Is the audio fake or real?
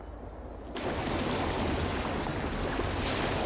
real